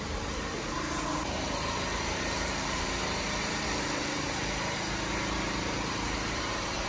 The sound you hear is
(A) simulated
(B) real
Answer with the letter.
A